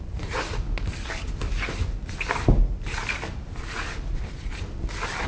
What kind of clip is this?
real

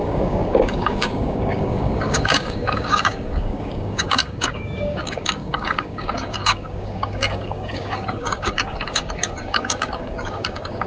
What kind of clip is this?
fake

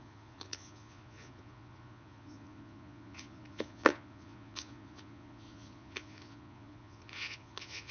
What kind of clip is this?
fake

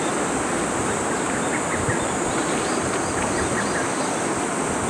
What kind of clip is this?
real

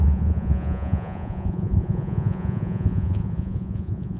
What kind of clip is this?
fake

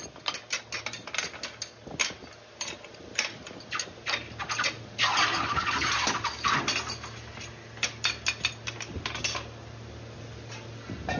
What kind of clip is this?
real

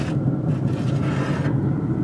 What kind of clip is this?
real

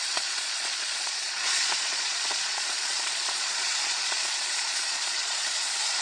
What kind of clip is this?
fake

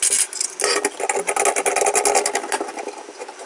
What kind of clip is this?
real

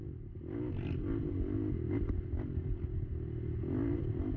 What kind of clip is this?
real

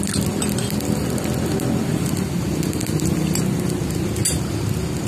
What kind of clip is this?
real